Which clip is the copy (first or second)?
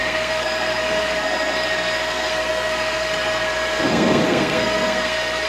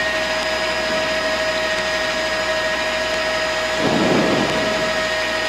first